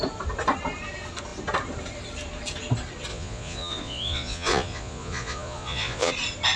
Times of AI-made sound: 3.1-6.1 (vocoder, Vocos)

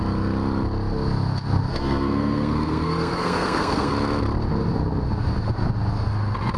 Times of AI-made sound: 1.7-3.9 (codec, SNAC)